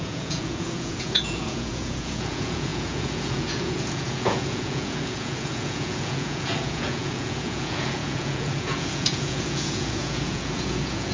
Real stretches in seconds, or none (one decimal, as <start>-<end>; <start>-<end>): none